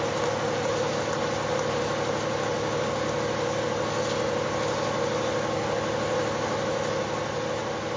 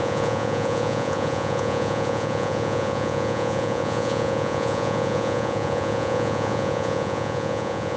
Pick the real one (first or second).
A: first